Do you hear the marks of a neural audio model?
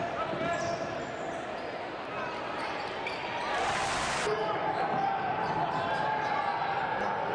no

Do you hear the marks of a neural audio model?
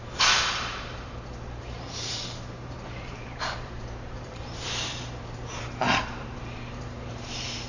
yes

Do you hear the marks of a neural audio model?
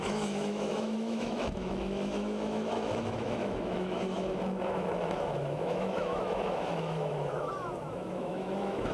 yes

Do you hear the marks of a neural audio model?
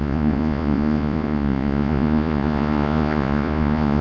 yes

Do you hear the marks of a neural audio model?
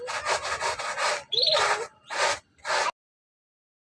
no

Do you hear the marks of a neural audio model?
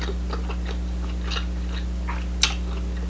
no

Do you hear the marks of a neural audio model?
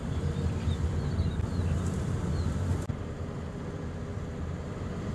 no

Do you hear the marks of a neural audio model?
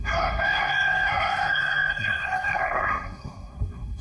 yes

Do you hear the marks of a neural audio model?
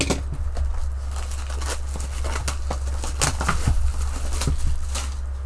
no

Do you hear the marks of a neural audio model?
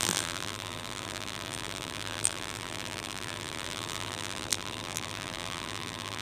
yes